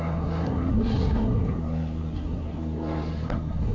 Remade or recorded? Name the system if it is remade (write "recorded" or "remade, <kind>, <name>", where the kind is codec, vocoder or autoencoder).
remade, codec, SNAC